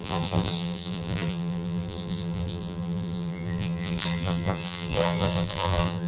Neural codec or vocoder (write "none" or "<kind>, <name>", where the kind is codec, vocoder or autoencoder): vocoder, BigVGAN v2